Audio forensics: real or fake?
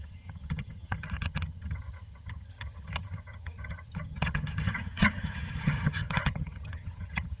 fake